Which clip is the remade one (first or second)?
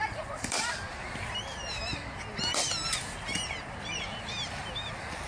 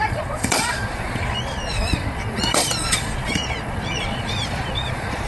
second